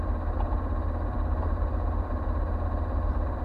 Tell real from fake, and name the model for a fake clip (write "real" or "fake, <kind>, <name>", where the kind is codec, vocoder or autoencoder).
fake, vocoder, BigVGAN v2